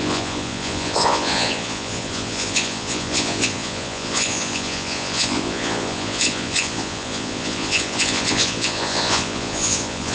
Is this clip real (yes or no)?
no